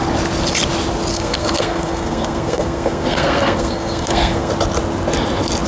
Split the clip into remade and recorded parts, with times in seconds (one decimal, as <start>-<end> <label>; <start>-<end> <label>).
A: 0.0-1.1 recorded; 1.1-4.5 remade; 4.5-5.7 recorded